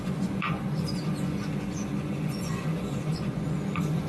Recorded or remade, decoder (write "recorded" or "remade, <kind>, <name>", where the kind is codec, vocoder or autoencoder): remade, vocoder, Vocos